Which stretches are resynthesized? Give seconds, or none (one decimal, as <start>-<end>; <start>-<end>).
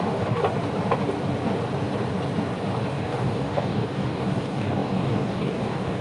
0.0-0.4; 2.9-6.0